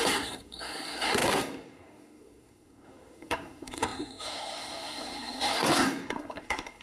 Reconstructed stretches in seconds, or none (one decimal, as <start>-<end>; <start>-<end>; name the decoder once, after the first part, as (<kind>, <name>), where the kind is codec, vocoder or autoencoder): 0.0-6.8 (codec, SNAC)